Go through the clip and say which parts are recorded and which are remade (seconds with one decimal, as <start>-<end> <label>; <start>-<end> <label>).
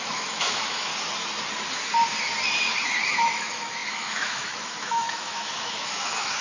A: 0.0-0.9 remade; 0.9-3.1 recorded; 3.1-6.4 remade